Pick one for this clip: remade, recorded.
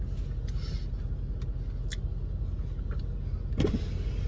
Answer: recorded